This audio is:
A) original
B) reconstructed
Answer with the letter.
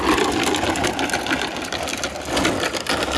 A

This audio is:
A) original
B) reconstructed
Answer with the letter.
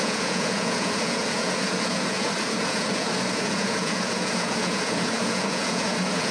B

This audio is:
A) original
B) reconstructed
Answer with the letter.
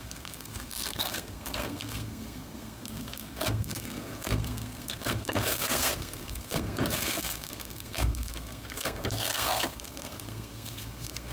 B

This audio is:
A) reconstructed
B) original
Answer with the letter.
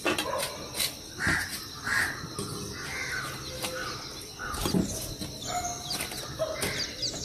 B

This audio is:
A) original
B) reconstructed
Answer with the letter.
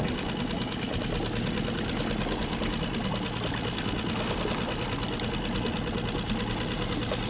A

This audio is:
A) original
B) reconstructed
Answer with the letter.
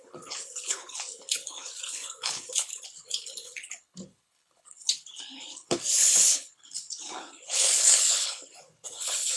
B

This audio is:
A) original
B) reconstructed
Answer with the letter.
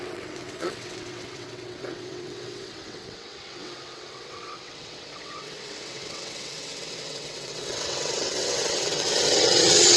B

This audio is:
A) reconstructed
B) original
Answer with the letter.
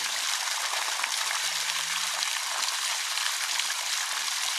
A